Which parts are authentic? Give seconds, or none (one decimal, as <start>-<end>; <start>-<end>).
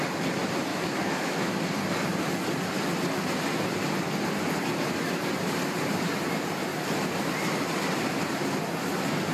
0.0-0.7; 1.5-9.3